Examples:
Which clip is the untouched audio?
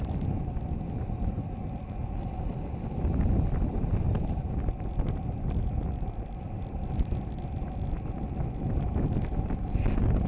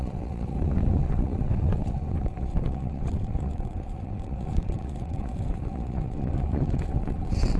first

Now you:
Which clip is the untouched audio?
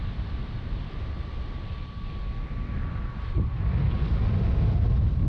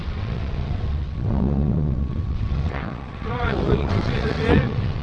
first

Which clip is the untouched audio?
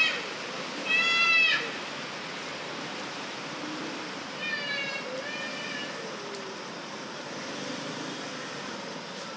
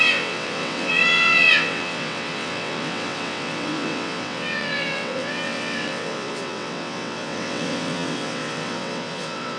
first